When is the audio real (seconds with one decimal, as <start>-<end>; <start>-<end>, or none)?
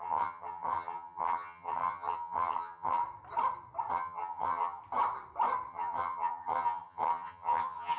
3.0-3.9; 4.8-5.7